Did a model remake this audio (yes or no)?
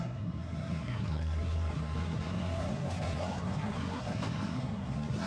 yes